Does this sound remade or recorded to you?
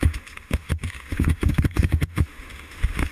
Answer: remade